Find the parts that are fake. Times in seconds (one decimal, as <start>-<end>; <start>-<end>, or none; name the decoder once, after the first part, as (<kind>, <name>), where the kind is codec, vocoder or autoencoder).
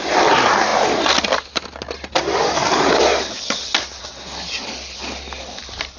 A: none